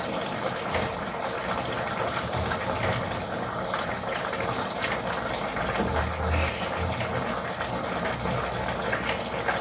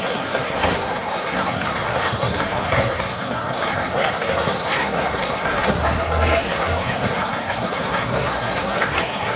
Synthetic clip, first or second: second